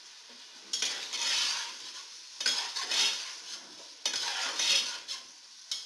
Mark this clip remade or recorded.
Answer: recorded